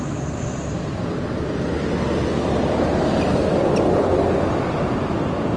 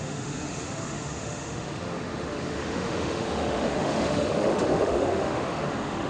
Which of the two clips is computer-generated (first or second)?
second